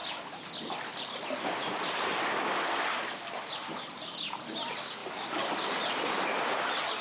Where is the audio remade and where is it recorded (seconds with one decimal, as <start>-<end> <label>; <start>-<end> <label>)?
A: 0.0-5.0 recorded; 5.0-6.1 remade; 6.1-7.0 recorded

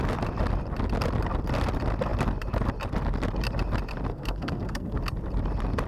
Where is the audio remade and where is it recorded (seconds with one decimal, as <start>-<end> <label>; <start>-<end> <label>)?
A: 0.0-4.1 recorded; 4.1-5.0 remade; 5.0-5.9 recorded